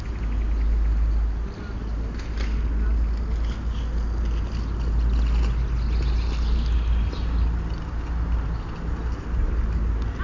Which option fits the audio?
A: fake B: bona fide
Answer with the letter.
B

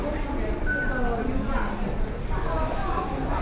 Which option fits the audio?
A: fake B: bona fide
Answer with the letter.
B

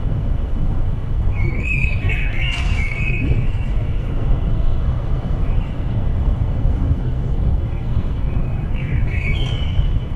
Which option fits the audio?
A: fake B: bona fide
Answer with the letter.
A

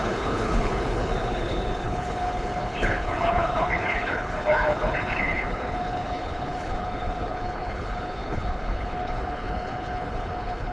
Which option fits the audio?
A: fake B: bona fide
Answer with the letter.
A